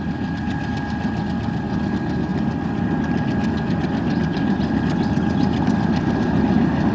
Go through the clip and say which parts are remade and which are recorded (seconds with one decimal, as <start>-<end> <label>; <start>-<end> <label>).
0.0-2.3 recorded; 2.3-6.4 remade; 6.4-6.9 recorded